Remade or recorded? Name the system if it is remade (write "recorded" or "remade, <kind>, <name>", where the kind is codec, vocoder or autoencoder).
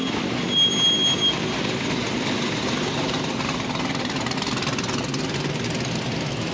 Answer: recorded